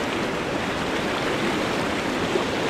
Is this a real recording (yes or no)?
yes